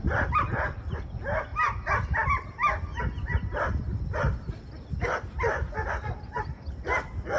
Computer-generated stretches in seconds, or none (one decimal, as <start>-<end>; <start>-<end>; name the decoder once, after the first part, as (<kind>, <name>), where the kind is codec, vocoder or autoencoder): none